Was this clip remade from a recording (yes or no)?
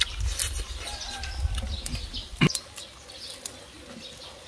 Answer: no